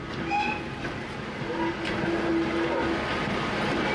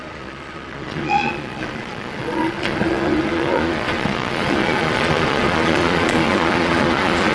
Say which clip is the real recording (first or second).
first